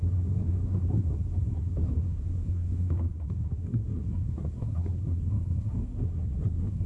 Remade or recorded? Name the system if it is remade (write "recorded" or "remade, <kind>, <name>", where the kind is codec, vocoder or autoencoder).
remade, codec, SNAC